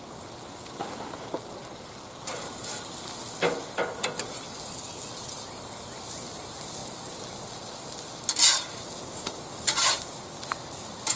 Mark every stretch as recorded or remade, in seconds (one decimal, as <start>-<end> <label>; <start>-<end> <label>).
0.0-11.2 recorded